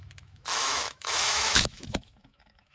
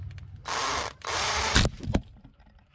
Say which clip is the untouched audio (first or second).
second